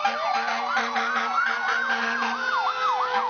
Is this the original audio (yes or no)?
yes